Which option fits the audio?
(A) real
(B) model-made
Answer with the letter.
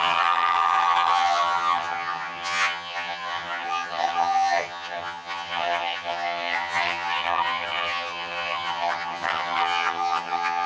B